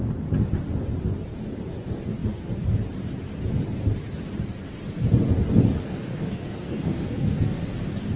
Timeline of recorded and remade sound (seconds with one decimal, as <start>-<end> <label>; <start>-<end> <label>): 0.0-5.8 recorded; 5.8-7.6 remade; 7.6-8.2 recorded

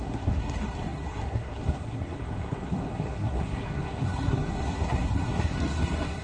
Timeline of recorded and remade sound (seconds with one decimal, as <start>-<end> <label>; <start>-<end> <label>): 0.0-6.2 remade

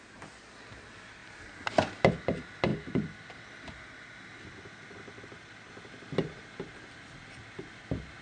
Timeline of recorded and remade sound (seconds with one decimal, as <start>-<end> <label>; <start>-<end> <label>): 0.0-8.2 recorded

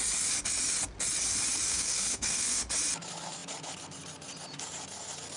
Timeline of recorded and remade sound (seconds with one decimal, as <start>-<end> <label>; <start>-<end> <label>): 0.0-1.7 recorded; 1.7-2.6 remade; 2.6-5.4 recorded

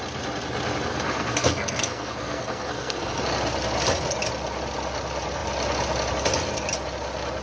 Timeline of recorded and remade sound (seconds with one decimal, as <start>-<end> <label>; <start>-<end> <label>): 0.0-0.9 recorded; 0.9-3.2 remade; 3.2-7.4 recorded